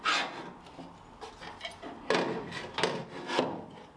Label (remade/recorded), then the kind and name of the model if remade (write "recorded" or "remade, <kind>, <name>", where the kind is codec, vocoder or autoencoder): recorded